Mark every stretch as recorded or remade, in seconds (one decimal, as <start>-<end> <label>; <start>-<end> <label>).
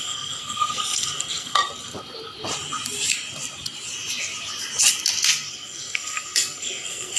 0.0-1.6 remade; 1.6-5.5 recorded; 5.5-7.2 remade